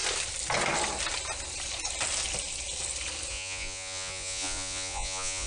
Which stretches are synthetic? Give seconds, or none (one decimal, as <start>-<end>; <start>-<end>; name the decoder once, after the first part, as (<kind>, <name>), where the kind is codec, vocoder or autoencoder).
3.3-5.5 (vocoder, Vocos)

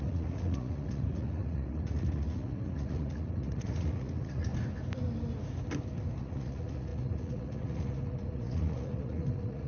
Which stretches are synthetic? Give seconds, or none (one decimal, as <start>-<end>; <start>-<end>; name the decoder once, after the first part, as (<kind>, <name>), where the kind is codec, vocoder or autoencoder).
0.0-4.5 (vocoder, Vocos); 6.2-9.7

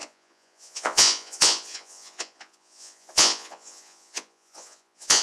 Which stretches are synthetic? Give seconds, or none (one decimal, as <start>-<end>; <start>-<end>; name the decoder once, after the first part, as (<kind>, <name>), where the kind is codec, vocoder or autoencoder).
0.0-5.2 (vocoder, Vocos)

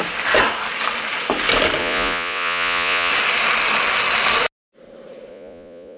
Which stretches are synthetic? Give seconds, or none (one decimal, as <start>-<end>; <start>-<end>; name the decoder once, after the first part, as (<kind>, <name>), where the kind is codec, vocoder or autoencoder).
1.8-3.1 (vocoder, Vocos); 5.3-6.0

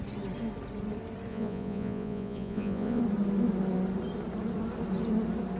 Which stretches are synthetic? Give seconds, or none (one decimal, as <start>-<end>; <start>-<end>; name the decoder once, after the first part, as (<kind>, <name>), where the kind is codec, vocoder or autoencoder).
1.3-3.0 (vocoder, Vocos)

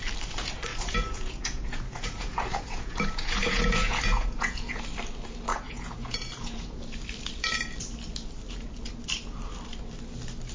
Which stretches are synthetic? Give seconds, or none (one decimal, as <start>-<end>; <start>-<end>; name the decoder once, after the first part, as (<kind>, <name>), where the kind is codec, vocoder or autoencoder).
0.7-4.8 (vocoder, Vocos); 5.5-6.8